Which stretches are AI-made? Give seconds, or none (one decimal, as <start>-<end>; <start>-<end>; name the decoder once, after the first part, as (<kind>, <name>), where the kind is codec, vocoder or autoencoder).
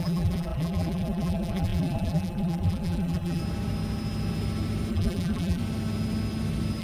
0.0-3.4 (vocoder, BigVGAN v2); 4.9-5.6